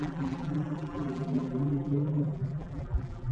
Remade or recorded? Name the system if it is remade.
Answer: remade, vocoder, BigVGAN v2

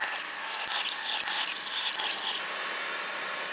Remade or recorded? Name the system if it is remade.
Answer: recorded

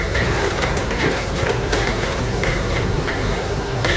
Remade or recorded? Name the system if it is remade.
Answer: remade, codec, SNAC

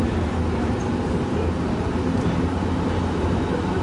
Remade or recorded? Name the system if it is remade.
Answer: recorded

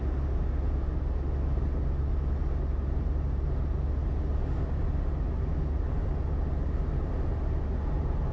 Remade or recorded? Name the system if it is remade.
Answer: recorded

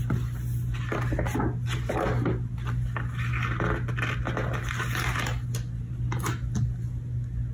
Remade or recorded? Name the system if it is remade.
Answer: recorded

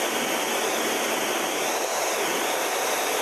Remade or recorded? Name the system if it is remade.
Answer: recorded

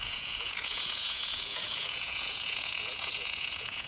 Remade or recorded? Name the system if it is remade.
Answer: remade, vocoder, Vocos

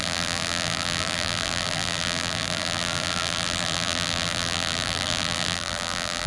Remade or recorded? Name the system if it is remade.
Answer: remade, vocoder, BigVGAN v2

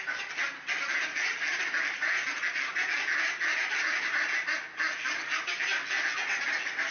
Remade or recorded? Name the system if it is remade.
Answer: recorded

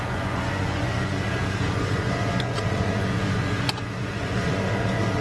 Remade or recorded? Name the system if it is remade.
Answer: remade, vocoder, Vocos